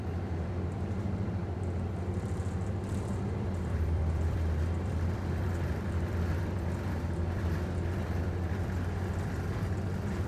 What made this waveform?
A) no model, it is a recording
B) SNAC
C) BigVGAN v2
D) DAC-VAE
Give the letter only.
C